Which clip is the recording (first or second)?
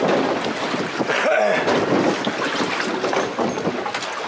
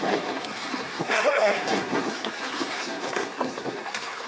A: first